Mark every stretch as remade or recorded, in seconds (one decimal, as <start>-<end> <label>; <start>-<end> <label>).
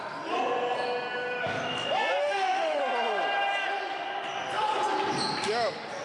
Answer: 0.0-2.2 recorded; 2.2-2.8 remade; 2.8-6.0 recorded